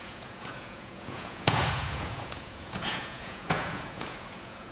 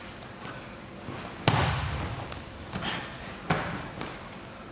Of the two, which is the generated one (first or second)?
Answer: first